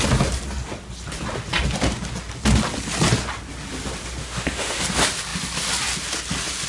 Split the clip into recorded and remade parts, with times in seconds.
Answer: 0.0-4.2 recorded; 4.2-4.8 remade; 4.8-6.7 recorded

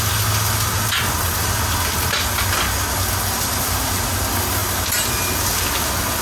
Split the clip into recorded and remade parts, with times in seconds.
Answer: 0.0-6.2 recorded

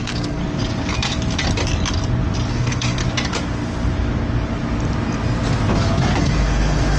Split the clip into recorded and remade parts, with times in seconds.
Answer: 0.0-0.4 remade; 0.4-2.5 recorded; 2.5-3.0 remade; 3.0-6.2 recorded; 6.2-7.0 remade

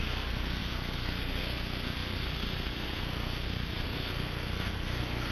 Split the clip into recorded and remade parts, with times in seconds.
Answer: 0.0-5.3 remade

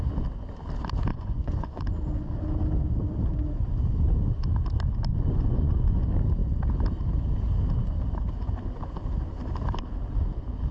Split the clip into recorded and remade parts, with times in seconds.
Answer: 0.0-1.1 recorded; 1.1-1.8 remade; 1.8-5.1 recorded; 5.1-6.0 remade; 6.0-10.7 recorded

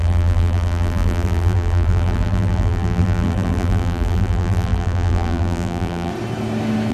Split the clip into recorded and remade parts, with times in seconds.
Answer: 0.0-6.1 remade; 6.1-6.9 recorded

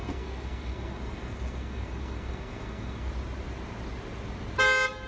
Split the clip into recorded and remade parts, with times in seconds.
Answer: 0.0-3.1 remade; 3.1-5.1 recorded

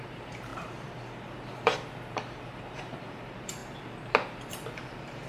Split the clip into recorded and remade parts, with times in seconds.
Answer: 0.0-3.6 remade; 3.6-4.5 recorded; 4.5-5.3 remade